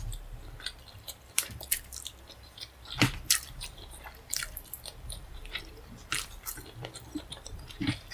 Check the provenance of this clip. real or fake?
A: fake